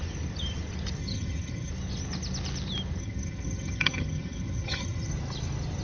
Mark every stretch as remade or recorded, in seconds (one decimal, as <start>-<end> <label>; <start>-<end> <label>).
0.0-1.0 recorded; 1.0-1.7 remade; 1.7-3.0 recorded; 3.0-5.1 remade; 5.1-5.8 recorded